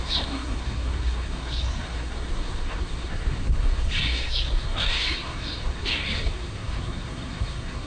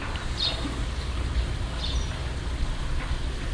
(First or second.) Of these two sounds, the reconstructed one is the first